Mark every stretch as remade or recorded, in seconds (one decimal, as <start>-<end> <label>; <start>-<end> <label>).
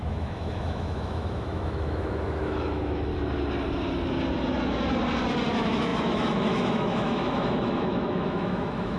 0.0-3.1 remade; 3.1-5.5 recorded; 5.5-9.0 remade